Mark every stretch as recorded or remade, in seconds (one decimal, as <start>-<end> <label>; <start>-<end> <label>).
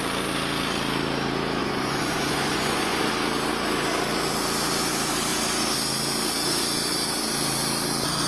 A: 0.0-1.6 recorded; 1.6-3.1 remade; 3.1-8.3 recorded